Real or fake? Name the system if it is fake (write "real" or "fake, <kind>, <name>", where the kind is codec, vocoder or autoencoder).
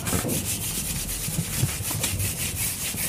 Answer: real